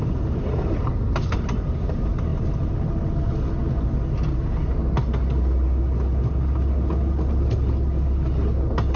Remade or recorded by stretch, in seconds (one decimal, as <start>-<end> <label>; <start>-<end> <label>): 0.0-9.0 recorded